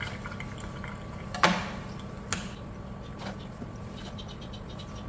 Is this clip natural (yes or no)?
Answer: yes